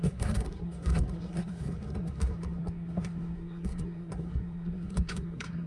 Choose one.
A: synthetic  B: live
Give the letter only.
A